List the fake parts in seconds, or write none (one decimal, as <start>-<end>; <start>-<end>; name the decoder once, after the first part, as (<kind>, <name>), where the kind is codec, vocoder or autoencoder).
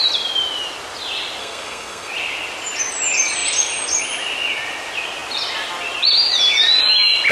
1.4-2.1 (codec, SNAC)